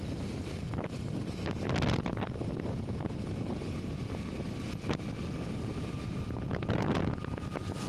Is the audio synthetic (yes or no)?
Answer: no